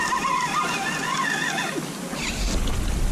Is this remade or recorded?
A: recorded